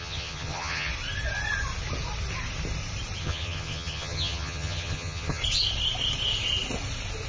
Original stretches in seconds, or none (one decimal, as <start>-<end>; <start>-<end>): 0.9-3.2; 5.4-7.3